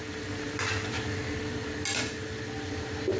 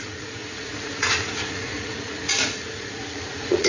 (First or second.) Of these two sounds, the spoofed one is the second